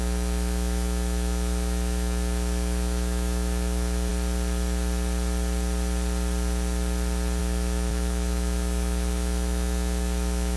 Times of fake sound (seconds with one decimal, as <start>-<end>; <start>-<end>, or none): 0.0-4.1; 7.4-10.6